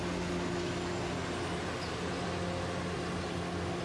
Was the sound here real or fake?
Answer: real